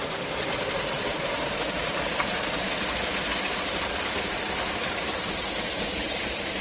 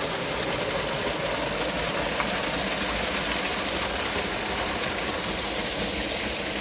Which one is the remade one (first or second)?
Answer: first